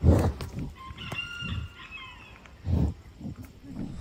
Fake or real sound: real